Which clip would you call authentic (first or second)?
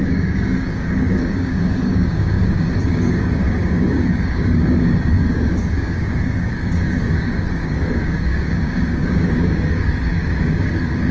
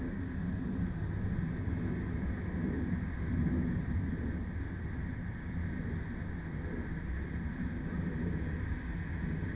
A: second